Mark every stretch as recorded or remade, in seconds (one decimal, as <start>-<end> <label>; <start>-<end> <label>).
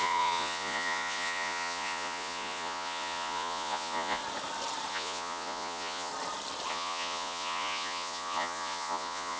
0.0-4.2 remade; 4.2-4.9 recorded; 4.9-6.1 remade; 6.1-6.7 recorded; 6.7-9.4 remade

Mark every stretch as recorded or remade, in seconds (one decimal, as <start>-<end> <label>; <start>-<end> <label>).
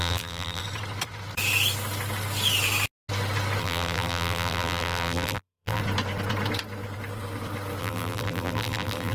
0.0-0.6 remade; 0.6-3.6 recorded; 3.6-5.8 remade; 5.8-7.8 recorded; 7.8-9.1 remade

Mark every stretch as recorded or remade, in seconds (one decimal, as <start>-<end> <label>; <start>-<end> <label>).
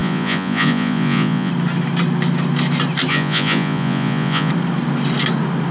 0.0-1.5 remade; 1.5-3.1 recorded; 3.1-4.5 remade; 4.5-5.7 recorded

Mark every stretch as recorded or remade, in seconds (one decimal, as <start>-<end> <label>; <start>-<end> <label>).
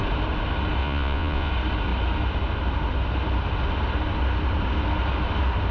0.0-0.8 recorded; 0.8-1.5 remade; 1.5-5.7 recorded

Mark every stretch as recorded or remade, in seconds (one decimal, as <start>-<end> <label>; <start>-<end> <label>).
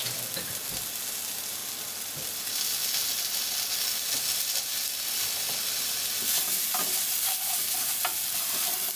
0.0-9.0 recorded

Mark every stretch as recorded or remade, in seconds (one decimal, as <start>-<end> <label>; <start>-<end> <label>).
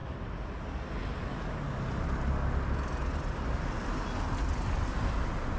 0.0-5.6 recorded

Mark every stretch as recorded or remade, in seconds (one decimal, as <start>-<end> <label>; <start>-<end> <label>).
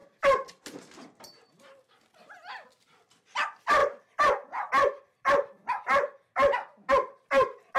0.0-7.8 recorded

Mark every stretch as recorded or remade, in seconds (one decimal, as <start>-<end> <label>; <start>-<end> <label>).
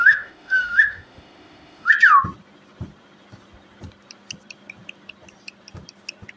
0.0-1.9 remade; 1.9-6.4 recorded